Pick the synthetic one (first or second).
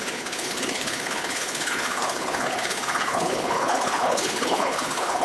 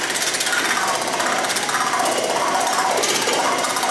first